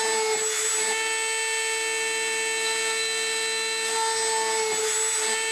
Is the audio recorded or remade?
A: recorded